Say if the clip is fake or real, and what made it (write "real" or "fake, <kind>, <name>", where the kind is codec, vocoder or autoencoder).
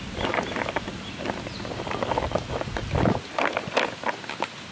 real